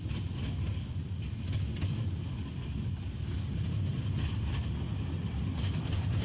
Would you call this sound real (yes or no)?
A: yes